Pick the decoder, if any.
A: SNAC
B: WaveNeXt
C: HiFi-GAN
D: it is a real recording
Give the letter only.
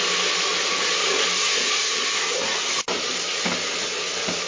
D